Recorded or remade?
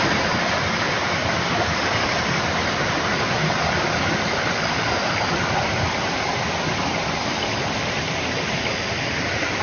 recorded